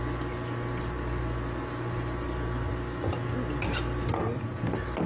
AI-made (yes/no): no